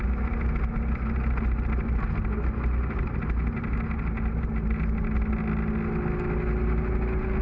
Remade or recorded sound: recorded